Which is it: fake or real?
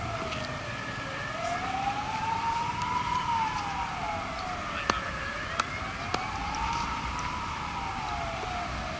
real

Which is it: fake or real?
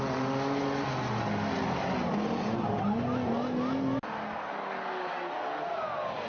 real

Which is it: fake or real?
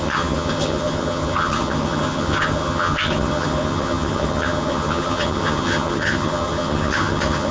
fake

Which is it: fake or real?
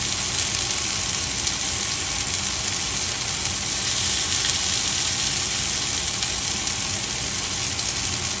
real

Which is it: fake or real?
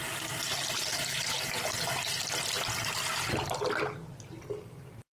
real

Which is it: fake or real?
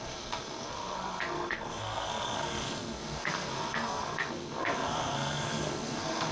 fake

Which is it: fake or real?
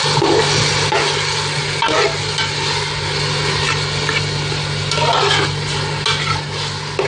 real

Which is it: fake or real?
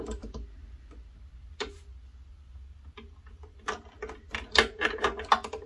real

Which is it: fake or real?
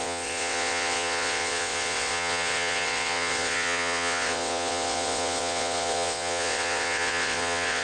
fake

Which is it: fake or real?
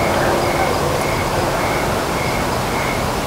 real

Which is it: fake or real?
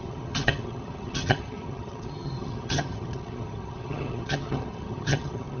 fake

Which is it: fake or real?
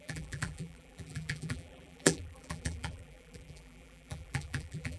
fake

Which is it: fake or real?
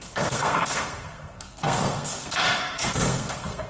fake